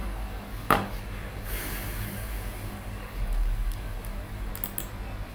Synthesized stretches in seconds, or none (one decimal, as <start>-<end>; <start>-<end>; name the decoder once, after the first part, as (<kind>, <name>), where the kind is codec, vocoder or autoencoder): 0.0-4.5 (codec, DAC)